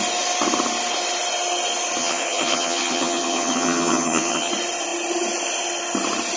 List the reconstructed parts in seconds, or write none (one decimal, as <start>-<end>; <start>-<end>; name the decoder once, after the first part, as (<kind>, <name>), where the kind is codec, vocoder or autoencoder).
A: 2.0-4.5 (vocoder, HiFi-GAN)